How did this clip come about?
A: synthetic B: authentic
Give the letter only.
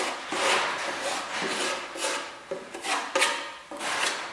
B